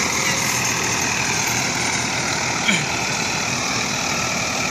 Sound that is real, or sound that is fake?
fake